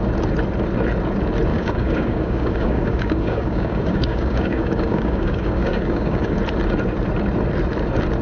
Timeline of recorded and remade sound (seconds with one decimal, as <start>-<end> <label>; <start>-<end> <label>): 0.0-1.5 recorded; 1.5-6.4 remade; 6.4-8.2 recorded